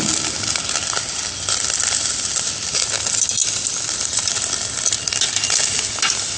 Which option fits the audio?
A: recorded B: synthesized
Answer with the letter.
A